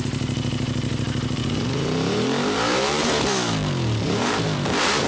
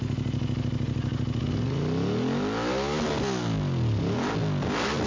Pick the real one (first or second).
second